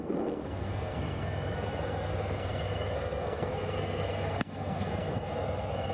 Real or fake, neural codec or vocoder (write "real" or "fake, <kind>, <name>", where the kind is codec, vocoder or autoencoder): fake, codec, SNAC